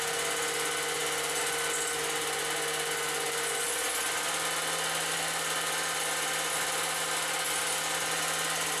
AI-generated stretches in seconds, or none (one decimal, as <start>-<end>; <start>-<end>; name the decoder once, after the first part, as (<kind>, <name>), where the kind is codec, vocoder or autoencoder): none